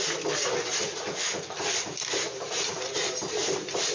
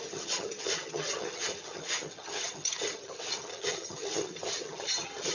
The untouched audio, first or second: first